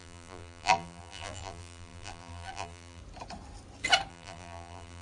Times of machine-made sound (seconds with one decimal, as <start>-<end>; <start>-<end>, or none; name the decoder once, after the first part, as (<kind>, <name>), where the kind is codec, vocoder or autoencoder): 0.0-3.0 (vocoder, BigVGAN v2); 4.1-5.0